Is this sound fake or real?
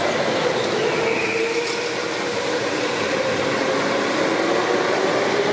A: real